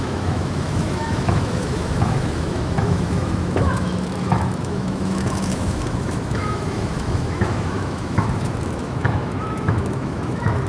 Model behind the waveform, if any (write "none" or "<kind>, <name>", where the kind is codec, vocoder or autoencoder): autoencoder, DAC-VAE